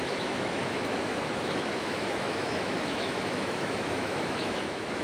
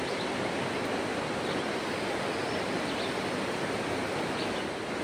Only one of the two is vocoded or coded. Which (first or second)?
first